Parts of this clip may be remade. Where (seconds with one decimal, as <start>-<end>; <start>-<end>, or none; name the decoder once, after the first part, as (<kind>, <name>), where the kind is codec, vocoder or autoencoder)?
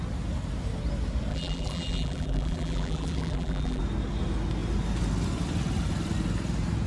1.3-3.8 (vocoder, BigVGAN v2)